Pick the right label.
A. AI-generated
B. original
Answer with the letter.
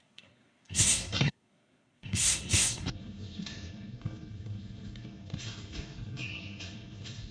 A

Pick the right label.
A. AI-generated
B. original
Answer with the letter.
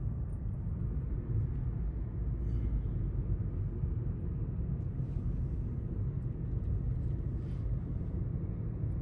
B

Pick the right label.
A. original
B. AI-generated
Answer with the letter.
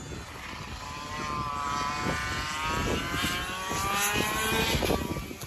A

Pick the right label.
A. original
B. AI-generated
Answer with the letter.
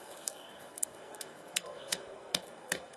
B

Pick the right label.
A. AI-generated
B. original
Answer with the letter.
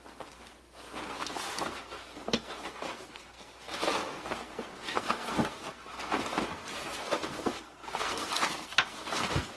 A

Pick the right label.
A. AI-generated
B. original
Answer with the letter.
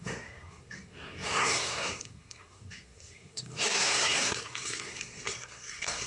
A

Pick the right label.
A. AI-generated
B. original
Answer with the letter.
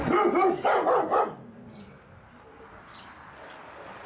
B